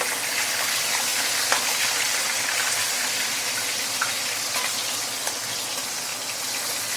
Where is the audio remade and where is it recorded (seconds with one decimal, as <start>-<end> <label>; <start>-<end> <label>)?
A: 0.0-7.0 recorded